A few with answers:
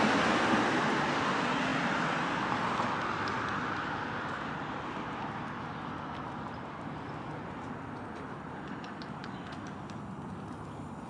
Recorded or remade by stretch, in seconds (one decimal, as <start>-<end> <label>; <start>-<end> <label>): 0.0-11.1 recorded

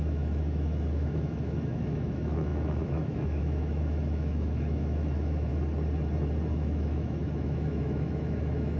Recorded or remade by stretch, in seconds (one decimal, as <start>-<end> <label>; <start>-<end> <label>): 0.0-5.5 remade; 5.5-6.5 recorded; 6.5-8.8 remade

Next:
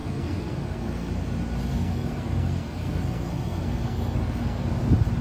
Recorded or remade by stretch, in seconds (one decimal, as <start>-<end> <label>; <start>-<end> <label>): 0.0-1.1 remade; 1.1-1.7 recorded; 1.7-4.8 remade; 4.8-5.2 recorded